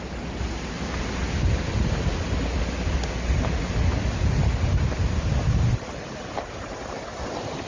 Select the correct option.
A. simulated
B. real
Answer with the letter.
B